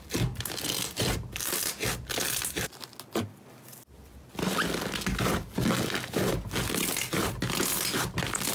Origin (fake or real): real